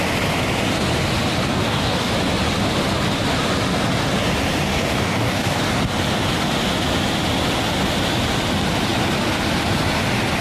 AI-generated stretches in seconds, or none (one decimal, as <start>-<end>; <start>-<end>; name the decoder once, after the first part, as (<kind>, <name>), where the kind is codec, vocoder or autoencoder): 1.5-2.1 (codec, DAC); 4.7-5.6